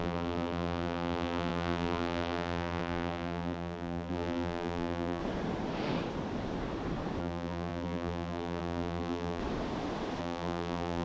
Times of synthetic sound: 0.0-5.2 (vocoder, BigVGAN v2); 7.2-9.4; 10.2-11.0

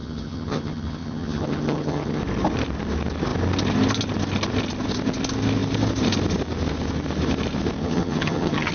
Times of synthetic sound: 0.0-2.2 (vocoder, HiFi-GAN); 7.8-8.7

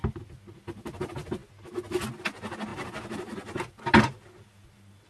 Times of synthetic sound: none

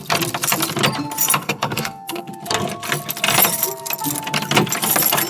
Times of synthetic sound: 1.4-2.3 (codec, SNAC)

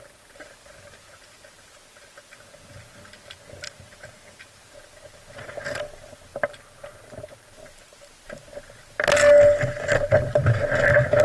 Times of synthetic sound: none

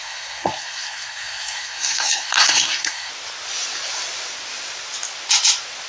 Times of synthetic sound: 0.0-3.1 (codec, SNAC)

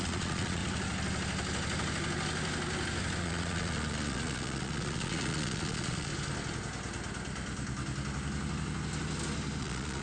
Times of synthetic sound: 0.0-0.6 (vocoder, Vocos); 3.2-6.1; 9.6-10.0

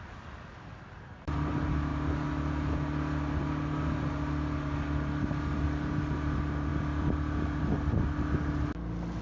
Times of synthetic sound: none